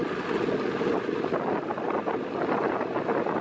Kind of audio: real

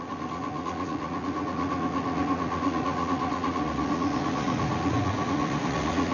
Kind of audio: fake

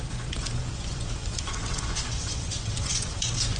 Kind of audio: fake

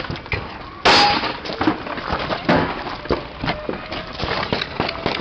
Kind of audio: real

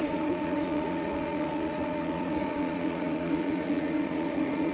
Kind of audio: fake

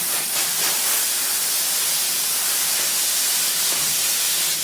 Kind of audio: real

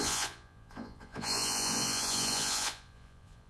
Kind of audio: fake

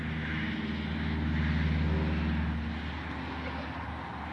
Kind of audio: real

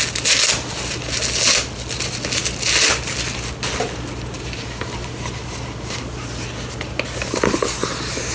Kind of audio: real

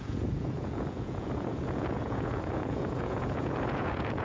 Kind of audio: fake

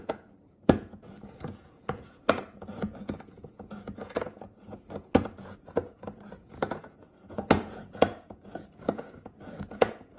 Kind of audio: fake